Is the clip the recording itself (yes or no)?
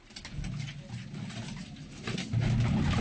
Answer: yes